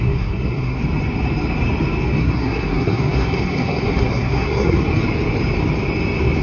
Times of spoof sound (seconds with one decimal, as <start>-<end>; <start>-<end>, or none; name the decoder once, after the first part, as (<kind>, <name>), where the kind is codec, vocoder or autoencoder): 0.0-0.8 (codec, SNAC); 2.2-4.8